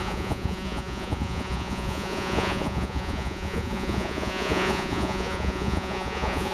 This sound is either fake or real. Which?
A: fake